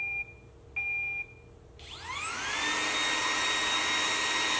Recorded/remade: recorded